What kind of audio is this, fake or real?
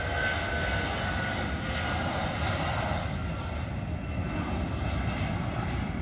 real